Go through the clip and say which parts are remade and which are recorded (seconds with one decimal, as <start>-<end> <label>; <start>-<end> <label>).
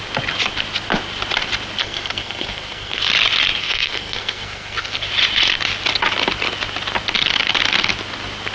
0.0-1.8 recorded; 1.8-3.1 remade; 3.1-3.6 recorded; 3.6-5.1 remade; 5.1-8.5 recorded